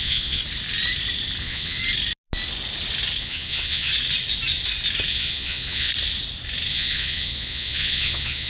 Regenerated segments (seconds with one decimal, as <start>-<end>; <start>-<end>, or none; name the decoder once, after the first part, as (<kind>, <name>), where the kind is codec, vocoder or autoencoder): 0.0-0.4 (vocoder, Vocos); 1.4-1.8; 3.2-3.9; 5.1-5.9; 6.7-8.5